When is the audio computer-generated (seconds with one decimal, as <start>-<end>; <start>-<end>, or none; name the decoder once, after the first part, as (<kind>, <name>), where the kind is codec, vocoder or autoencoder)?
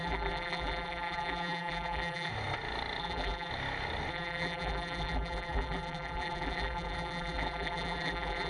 0.0-2.3 (vocoder, BigVGAN v2); 3.0-3.5; 4.1-8.5